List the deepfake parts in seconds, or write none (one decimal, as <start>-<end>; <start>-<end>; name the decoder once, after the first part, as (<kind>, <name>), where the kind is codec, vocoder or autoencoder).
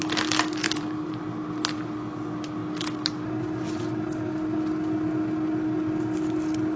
0.6-1.2 (vocoder, BigVGAN v2)